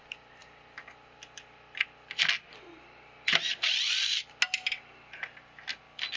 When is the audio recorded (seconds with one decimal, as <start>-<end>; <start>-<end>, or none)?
0.0-6.2